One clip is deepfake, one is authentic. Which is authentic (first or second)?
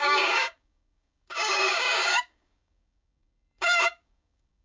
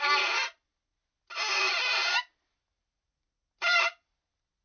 second